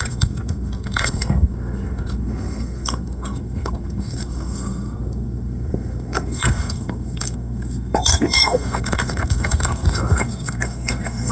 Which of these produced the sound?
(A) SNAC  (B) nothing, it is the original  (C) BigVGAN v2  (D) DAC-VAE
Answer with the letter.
A